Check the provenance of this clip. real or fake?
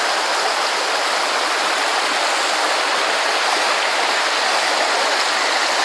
real